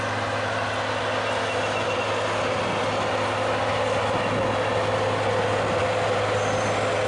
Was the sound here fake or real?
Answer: real